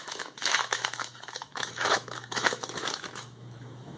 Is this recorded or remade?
remade